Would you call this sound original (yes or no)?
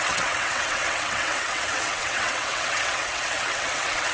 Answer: no